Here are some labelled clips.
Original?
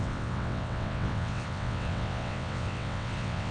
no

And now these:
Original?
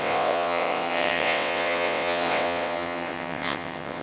no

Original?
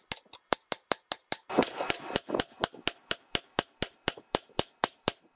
yes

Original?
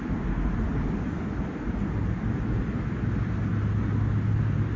yes